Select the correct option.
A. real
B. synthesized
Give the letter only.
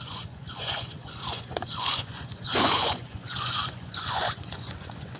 B